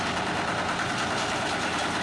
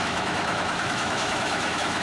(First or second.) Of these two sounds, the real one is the first